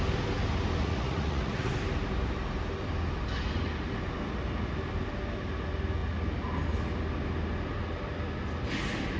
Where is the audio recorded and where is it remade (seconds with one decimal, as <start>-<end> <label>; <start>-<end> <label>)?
0.0-0.8 recorded; 0.8-1.7 remade; 1.7-9.2 recorded